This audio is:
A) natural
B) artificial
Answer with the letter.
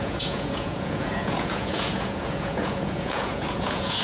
B